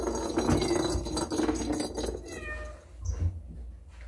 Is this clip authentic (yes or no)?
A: yes